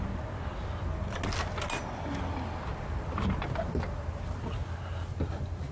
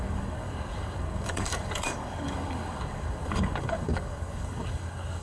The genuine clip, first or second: first